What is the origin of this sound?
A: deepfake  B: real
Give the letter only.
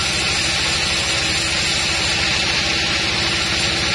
B